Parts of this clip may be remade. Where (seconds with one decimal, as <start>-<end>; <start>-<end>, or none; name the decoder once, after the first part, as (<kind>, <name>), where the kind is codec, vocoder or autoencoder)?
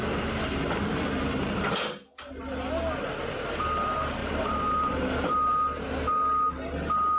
0.9-1.9 (vocoder, BigVGAN v2); 4.2-5.5